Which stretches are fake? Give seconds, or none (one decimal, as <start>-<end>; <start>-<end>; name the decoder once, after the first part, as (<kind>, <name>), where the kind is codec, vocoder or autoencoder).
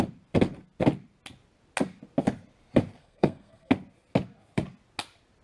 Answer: 3.0-3.7 (codec, SNAC)